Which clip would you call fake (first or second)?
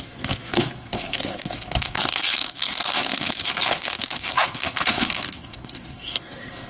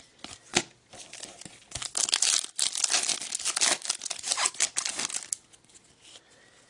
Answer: first